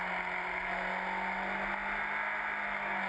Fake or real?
real